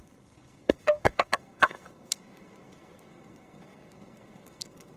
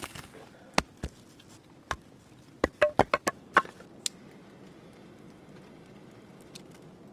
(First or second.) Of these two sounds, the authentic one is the second